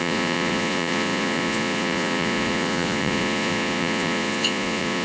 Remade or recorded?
remade